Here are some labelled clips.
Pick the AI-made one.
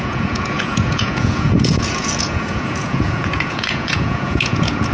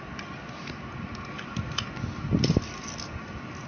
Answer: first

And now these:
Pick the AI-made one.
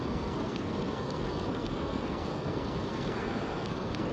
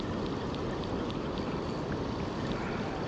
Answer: first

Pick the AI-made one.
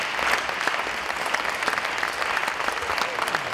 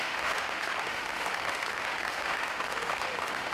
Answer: second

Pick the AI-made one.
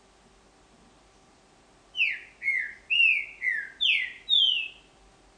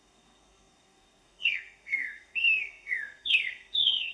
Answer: second